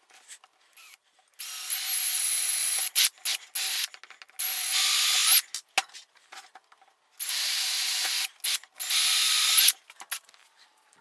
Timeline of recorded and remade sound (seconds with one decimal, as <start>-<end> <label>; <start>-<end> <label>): 0.0-2.0 recorded; 2.0-3.2 remade; 3.2-11.0 recorded